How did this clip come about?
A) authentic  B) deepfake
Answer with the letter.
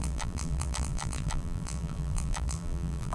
B